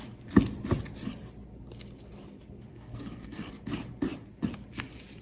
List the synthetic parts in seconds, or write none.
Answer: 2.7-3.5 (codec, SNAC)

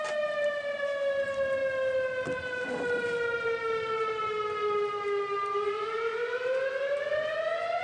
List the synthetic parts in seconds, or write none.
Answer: none

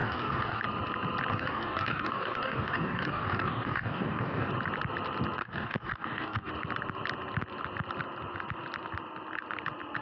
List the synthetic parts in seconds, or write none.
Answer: 0.0-0.6 (codec, DAC); 1.3-4.5; 5.4-6.5

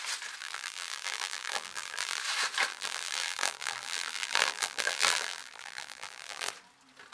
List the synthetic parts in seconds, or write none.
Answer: 0.4-2.2 (vocoder, BigVGAN v2); 2.7-6.5